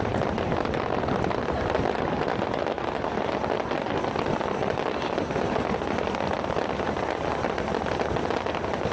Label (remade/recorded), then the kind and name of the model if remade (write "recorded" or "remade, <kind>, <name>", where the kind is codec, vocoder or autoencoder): recorded